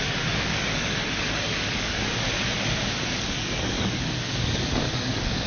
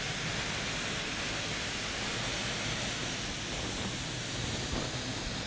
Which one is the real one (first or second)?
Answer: second